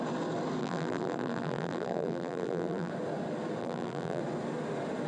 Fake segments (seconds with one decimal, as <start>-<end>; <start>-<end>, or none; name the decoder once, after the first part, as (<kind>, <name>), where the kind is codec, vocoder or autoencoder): 0.6-2.9 (vocoder, BigVGAN v2); 3.6-4.2